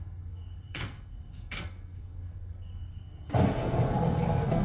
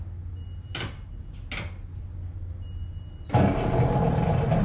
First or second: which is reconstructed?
first